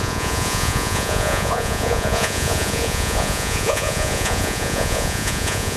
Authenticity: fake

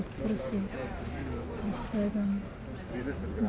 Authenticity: real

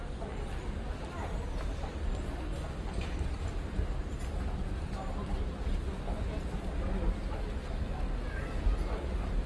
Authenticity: real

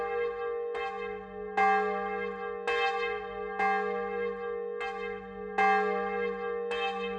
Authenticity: real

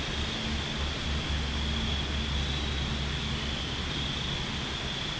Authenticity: real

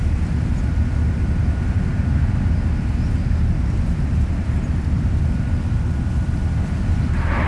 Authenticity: real